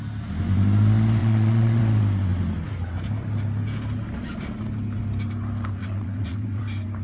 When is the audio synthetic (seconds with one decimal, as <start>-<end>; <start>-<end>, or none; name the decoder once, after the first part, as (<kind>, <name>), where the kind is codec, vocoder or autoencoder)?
1.2-1.8 (vocoder, WaveNeXt); 5.8-6.6